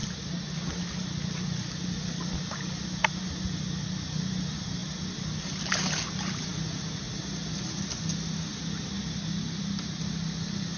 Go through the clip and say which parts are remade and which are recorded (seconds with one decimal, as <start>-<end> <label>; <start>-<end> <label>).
0.0-10.8 recorded